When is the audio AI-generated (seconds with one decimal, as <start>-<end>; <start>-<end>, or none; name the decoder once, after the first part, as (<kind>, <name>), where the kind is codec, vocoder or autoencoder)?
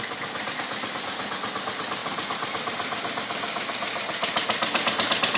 none